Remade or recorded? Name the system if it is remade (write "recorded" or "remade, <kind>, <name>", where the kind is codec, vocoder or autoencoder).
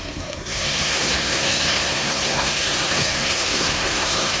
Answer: remade, codec, SNAC